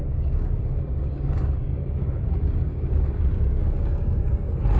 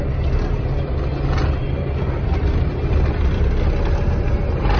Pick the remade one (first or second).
first